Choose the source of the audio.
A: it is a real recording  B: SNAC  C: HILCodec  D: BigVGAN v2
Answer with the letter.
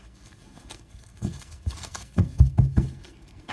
B